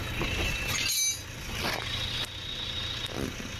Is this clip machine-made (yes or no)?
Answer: no